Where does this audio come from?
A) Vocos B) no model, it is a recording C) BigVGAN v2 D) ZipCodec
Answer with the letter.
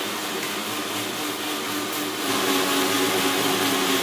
B